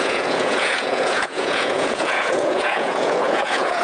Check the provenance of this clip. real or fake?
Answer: fake